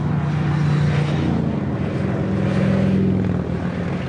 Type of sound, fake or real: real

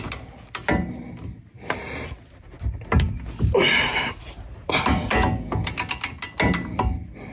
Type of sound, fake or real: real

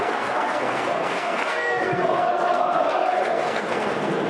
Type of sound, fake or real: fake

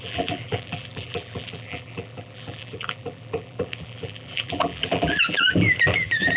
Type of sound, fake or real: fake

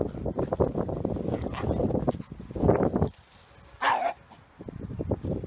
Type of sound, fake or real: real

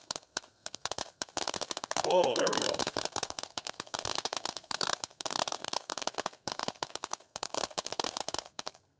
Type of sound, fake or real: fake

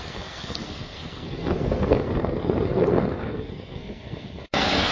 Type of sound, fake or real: fake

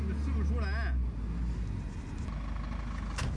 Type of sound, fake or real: real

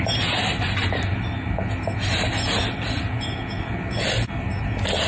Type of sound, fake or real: real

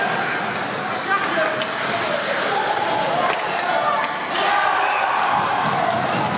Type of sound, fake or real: real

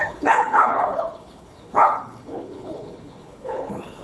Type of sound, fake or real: fake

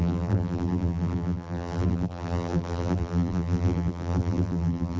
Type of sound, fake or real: fake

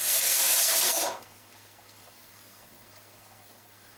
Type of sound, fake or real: fake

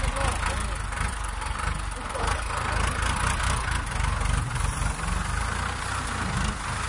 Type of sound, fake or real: real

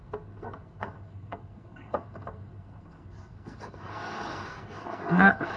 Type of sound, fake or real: fake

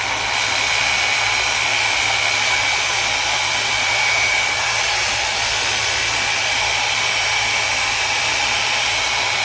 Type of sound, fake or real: fake